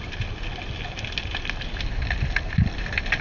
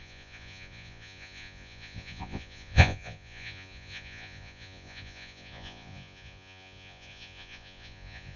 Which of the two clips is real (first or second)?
first